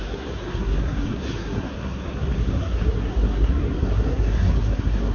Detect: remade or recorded remade